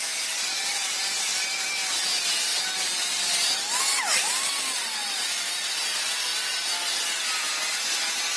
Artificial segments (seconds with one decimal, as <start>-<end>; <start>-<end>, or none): none